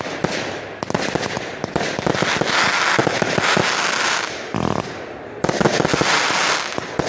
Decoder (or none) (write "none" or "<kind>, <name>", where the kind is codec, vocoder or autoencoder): none